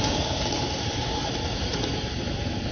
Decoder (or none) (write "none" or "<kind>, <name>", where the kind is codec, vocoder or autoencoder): vocoder, BigVGAN v2